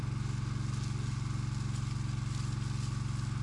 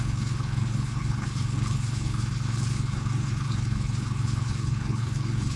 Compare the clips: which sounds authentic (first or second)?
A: first